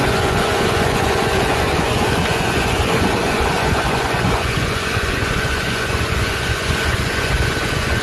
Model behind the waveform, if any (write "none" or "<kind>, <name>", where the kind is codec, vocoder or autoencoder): vocoder, Vocos